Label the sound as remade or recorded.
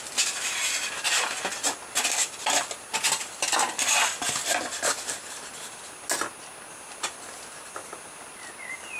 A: recorded